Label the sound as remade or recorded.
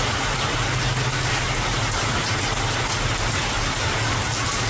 recorded